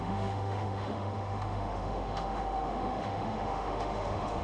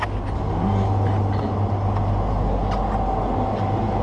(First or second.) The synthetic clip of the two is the first